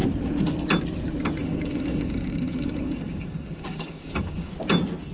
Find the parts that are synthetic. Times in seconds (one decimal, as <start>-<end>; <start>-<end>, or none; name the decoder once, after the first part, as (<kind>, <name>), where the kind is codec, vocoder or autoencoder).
1.4-4.5 (codec, DAC)